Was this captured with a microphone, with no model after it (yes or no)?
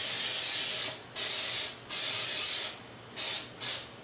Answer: yes